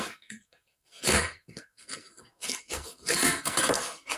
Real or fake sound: fake